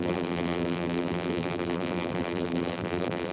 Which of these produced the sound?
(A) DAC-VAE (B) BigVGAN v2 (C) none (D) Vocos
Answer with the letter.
B